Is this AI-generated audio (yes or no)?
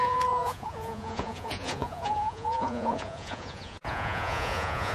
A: yes